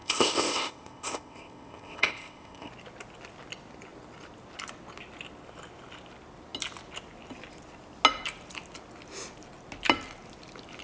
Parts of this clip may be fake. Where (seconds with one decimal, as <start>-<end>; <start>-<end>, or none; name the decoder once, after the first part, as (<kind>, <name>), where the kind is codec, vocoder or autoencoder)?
0.0-2.7 (codec, ZipCodec)